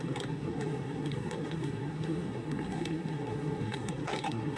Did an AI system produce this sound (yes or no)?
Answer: yes